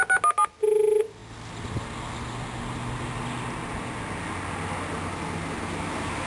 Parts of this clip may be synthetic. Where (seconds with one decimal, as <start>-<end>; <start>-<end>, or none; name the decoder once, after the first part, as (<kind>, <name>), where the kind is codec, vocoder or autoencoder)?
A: none